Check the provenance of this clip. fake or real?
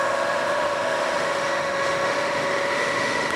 fake